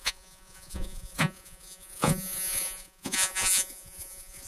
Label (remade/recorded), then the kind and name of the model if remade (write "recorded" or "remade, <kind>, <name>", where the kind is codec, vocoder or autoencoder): remade, vocoder, Vocos